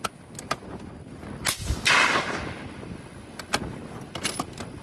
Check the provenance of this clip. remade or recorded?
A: recorded